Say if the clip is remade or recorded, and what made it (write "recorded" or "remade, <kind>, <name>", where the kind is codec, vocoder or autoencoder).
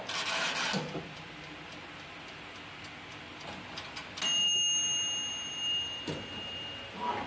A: recorded